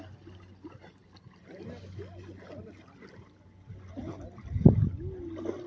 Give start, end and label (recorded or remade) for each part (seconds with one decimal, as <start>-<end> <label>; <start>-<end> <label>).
0.0-5.7 recorded